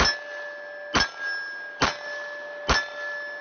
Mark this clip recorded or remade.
recorded